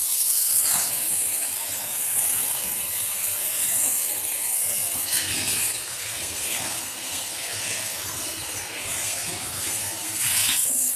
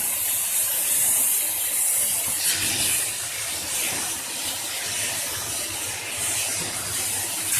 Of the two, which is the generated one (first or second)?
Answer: first